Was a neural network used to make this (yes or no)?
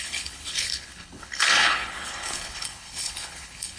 yes